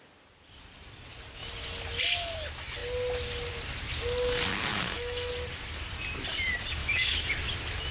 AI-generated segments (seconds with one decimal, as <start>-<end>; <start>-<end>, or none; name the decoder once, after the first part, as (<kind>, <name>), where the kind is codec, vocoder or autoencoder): 4.7-5.3 (autoencoder, DAC-VAE); 6.8-7.3

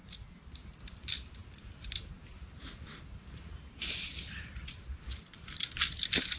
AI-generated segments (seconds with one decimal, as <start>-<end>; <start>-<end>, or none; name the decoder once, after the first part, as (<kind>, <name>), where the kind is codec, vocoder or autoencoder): 0.0-6.4 (vocoder, BigVGAN v2)

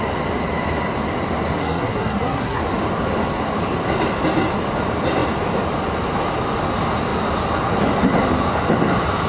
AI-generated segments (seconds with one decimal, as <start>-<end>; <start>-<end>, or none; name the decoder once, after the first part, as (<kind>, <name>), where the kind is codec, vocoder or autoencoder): 1.6-2.6 (codec, SNAC)